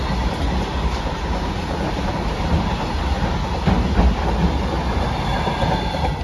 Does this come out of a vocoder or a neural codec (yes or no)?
no